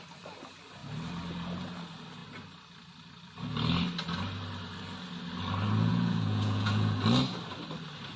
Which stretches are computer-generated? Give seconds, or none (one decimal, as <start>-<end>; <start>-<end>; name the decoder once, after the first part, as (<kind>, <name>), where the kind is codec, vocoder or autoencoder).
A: 5.9-7.0 (vocoder, Vocos)